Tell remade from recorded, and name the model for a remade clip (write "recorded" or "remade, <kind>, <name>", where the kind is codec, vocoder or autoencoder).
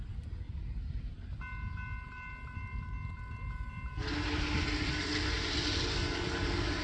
recorded